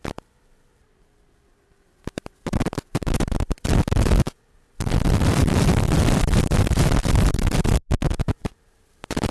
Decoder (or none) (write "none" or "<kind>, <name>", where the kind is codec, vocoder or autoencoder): vocoder, BigVGAN v2